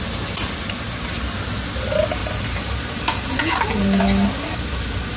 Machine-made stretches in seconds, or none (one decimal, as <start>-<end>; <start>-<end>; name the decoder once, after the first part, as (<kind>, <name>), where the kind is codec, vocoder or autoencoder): 2.2-4.0 (vocoder, BigVGAN v2)